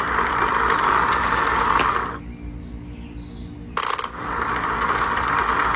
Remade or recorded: recorded